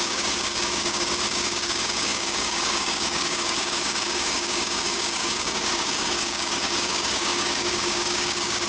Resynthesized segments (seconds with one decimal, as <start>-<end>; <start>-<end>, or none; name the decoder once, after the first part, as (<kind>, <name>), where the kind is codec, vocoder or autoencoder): 0.0-8.7 (codec, DAC)